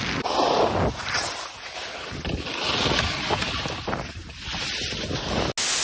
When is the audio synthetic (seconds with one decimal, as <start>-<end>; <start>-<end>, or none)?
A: none